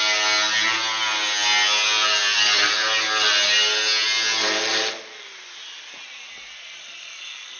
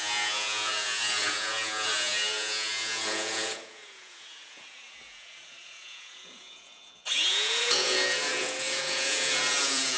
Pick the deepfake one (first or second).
second